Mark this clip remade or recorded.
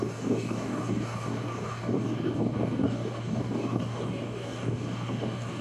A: remade